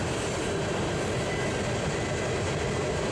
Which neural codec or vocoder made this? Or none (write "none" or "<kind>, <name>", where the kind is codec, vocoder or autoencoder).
none